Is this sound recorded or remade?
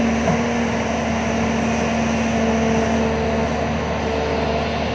recorded